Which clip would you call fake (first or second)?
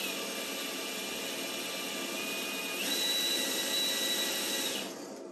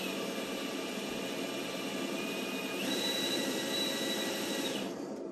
second